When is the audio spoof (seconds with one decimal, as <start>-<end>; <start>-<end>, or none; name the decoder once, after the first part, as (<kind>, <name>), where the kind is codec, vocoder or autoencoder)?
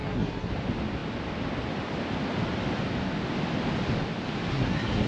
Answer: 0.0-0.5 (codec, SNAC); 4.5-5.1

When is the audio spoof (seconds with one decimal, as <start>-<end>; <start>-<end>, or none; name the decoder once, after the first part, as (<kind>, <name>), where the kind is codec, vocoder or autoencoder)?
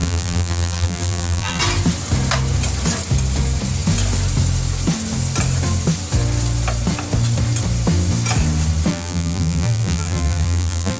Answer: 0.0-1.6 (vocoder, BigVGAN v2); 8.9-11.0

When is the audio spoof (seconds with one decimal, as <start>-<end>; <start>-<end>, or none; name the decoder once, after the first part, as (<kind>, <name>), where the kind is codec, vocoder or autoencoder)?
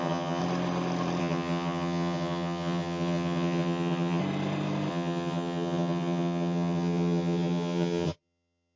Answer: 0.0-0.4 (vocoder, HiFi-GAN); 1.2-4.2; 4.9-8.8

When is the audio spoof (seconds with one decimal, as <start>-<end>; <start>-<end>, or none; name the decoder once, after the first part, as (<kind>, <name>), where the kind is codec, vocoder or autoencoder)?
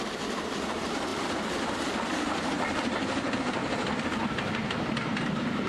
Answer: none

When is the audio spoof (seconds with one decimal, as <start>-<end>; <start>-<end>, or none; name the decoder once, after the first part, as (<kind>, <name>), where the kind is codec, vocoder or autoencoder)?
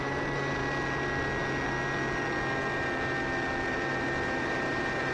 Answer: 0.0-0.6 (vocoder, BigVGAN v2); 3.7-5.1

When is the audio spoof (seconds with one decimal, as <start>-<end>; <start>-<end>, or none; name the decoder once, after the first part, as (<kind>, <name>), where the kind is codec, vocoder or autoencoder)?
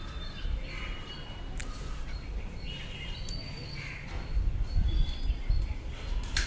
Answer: none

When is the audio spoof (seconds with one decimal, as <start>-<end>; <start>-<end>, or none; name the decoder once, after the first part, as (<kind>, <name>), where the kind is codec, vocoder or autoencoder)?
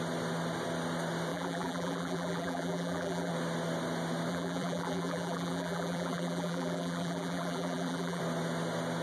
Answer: 1.3-3.3 (vocoder, BigVGAN v2); 4.3-8.2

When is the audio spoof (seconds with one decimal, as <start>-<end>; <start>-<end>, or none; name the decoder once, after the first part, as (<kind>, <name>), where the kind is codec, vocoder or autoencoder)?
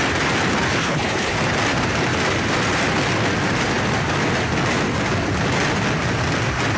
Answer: 0.8-1.4 (codec, HILCodec)